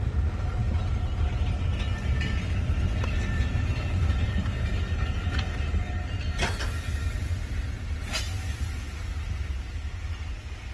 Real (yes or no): yes